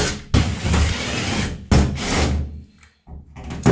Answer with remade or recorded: recorded